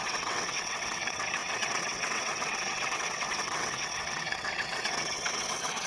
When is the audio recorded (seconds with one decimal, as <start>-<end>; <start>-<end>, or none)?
none